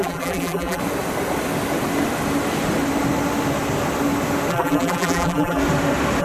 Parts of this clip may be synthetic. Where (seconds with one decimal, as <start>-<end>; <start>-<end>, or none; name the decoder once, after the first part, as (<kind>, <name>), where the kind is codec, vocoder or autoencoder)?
0.0-0.8 (vocoder, BigVGAN v2); 4.5-5.6